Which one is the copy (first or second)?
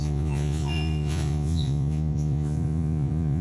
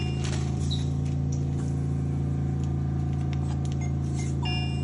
first